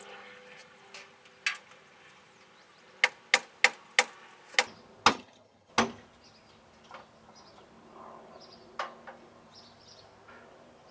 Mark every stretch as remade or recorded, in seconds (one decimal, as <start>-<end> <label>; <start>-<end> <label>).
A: 0.0-5.1 recorded; 5.1-5.7 remade; 5.7-10.9 recorded